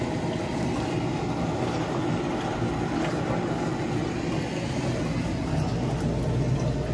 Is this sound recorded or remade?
recorded